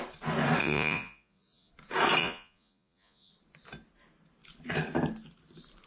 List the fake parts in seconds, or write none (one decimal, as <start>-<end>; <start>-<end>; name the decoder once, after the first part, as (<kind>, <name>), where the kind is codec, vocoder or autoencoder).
0.6-1.7 (vocoder, Vocos); 2.2-3.3